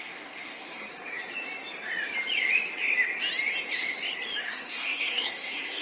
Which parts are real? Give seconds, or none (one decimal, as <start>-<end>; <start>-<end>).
0.9-4.4